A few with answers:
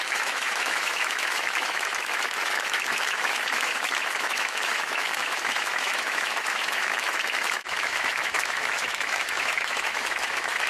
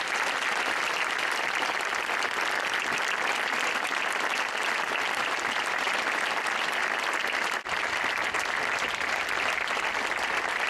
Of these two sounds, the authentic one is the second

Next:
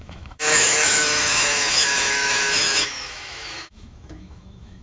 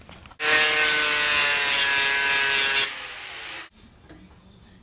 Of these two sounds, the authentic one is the second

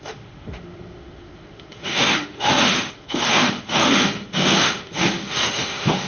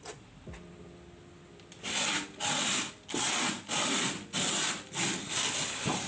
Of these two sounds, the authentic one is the second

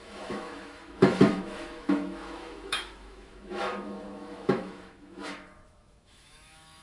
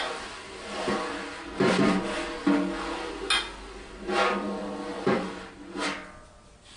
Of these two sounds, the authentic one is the second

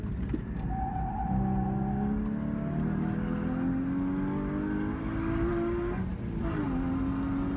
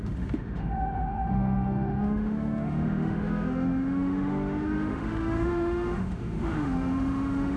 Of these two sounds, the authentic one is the first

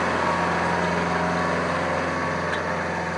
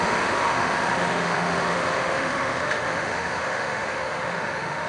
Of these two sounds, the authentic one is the first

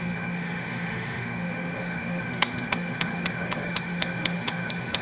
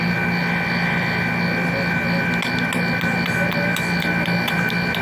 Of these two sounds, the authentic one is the second